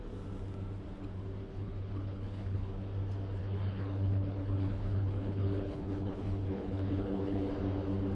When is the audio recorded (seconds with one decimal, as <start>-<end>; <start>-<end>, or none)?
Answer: 0.0-1.5; 2.7-3.4; 7.5-8.2